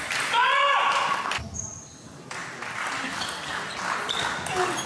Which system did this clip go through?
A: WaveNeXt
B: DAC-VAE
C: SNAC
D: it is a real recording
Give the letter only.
D